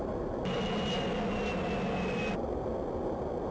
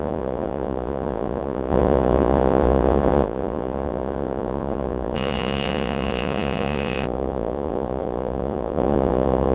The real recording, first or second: first